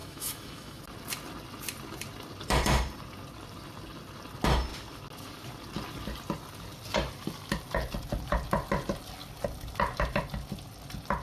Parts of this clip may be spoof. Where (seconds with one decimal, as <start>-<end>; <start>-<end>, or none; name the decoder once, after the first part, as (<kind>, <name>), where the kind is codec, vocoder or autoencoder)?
0.0-0.8 (autoencoder, DAC-VAE)